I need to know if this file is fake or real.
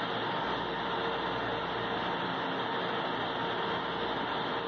real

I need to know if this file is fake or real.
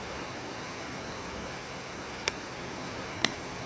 fake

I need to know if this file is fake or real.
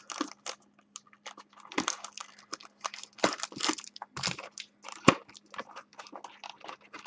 real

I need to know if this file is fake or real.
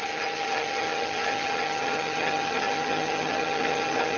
fake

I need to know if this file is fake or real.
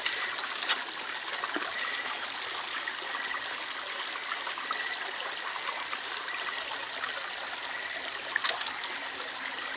real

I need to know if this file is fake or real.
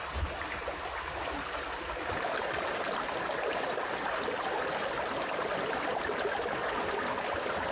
real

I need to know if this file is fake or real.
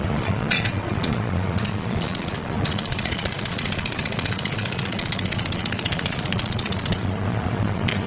fake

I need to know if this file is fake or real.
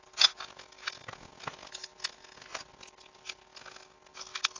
real